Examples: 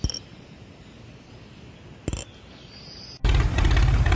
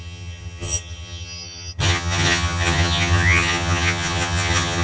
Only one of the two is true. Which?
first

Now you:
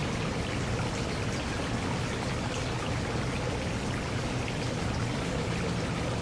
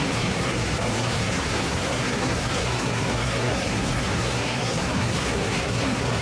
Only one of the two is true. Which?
first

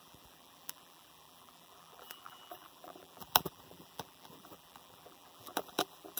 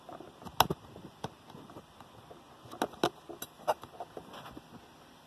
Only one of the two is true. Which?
second